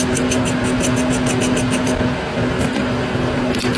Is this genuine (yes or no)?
yes